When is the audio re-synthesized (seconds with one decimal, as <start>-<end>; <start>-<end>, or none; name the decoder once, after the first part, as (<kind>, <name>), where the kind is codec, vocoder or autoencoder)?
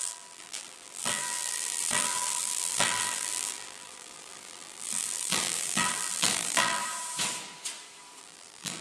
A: 0.0-6.8 (vocoder, BigVGAN v2); 8.2-8.8